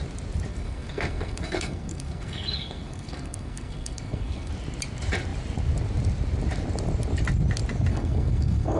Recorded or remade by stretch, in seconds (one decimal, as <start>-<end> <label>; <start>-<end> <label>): 0.0-0.5 recorded; 0.5-4.5 remade; 4.5-7.9 recorded; 7.9-8.8 remade